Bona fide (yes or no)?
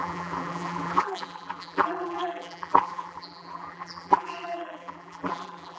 no